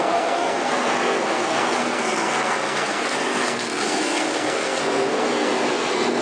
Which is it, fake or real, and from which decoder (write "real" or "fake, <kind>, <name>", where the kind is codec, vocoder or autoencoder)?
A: fake, codec, SNAC